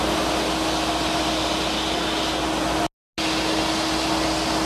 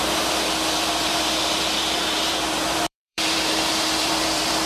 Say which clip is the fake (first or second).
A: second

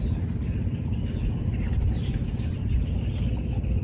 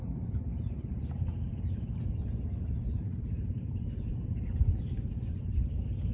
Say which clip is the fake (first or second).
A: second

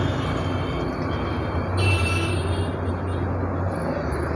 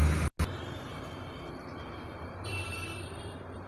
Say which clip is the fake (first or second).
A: second